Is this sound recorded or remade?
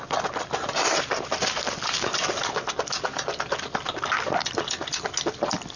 recorded